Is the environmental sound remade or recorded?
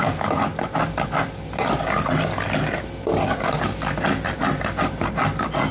recorded